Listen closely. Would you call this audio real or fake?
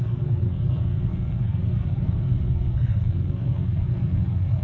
fake